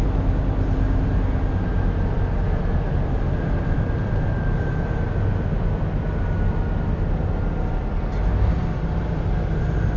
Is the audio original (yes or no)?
yes